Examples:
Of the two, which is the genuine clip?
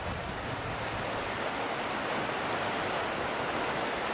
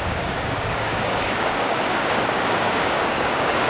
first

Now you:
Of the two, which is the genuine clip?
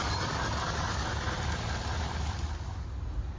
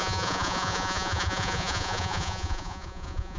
first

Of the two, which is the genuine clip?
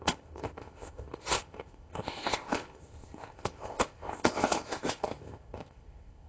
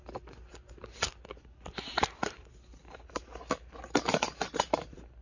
second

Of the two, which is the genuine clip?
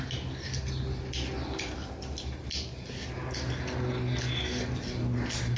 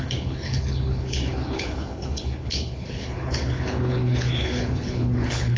first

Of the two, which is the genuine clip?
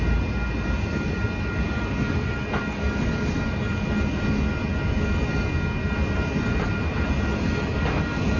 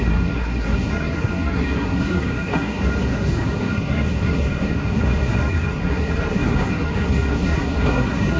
first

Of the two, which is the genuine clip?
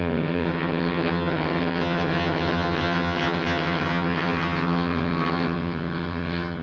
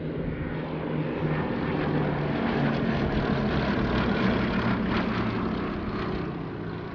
second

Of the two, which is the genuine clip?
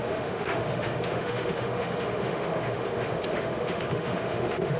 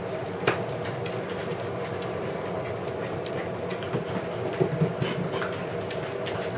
second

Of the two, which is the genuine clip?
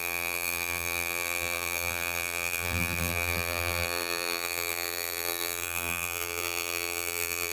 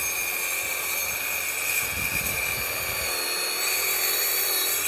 second